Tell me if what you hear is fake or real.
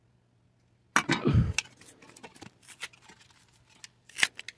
real